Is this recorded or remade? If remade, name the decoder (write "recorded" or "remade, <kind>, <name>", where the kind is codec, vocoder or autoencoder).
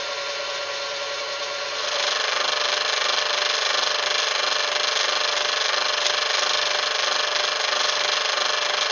recorded